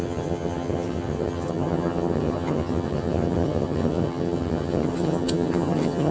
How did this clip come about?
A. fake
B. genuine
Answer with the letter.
A